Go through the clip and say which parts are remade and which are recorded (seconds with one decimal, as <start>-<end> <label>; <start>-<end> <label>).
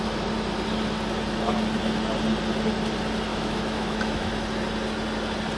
0.0-3.3 recorded; 3.3-4.3 remade; 4.3-5.6 recorded